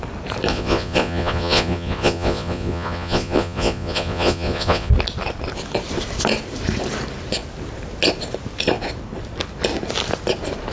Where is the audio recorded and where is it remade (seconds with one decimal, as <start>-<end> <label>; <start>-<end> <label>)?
0.0-0.5 recorded; 0.5-4.9 remade; 4.9-10.7 recorded